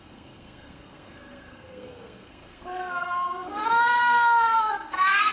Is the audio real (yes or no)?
no